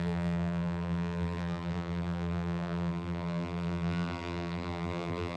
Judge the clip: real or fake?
fake